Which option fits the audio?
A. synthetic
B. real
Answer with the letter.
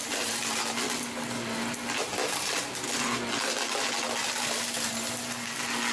B